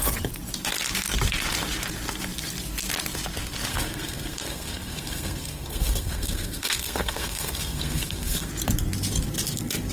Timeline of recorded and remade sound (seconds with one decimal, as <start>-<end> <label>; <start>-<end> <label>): 0.0-3.7 recorded; 3.7-8.5 remade; 8.5-9.9 recorded